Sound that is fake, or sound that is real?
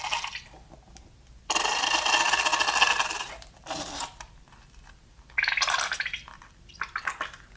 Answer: real